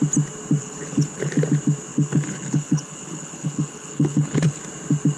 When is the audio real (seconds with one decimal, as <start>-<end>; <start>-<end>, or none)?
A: 0.0-0.6; 1.3-1.9; 4.6-5.2